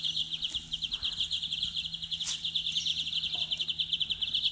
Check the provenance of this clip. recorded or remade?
recorded